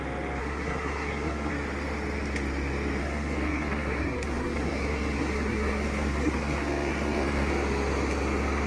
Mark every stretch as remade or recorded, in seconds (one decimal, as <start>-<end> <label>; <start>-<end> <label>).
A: 0.0-0.4 recorded; 0.4-1.5 remade; 1.5-3.0 recorded; 3.0-7.5 remade; 7.5-8.7 recorded